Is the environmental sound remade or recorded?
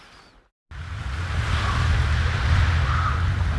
recorded